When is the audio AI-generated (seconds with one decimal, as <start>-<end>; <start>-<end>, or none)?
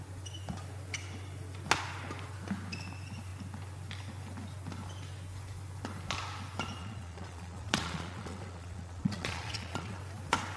6.8-10.0